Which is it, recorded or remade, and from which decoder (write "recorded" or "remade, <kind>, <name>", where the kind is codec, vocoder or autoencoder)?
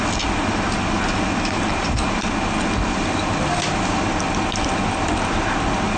recorded